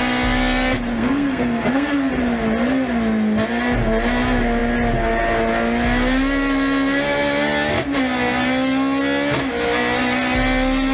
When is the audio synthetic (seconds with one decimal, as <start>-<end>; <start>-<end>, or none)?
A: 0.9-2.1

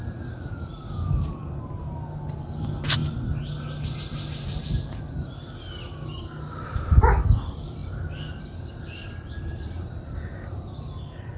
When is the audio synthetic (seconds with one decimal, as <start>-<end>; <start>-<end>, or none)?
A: none

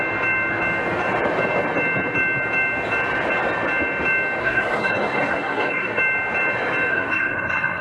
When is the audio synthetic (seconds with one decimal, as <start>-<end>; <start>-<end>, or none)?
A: 4.4-6.0; 6.9-7.8

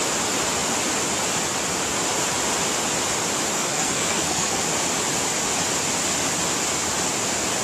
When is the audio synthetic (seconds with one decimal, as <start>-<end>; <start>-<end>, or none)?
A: 3.5-4.6

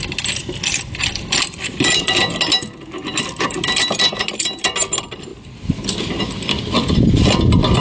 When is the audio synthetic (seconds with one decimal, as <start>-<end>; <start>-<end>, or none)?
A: none

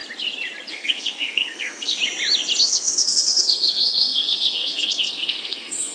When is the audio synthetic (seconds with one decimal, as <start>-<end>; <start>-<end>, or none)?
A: 0.7-2.0; 2.6-5.9

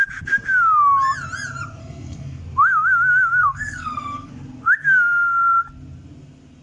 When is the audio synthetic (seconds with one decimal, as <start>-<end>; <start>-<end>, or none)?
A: 1.8-2.4; 3.4-4.3

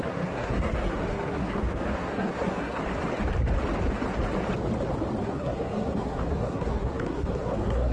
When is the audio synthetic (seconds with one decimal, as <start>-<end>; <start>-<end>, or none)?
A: 0.0-2.8; 5.2-7.9